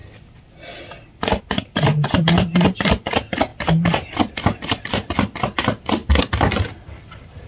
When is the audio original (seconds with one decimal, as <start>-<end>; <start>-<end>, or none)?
0.0-1.4; 3.5-4.8; 6.0-7.5